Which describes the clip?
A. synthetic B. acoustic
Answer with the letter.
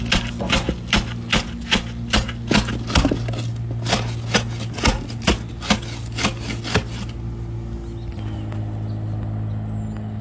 B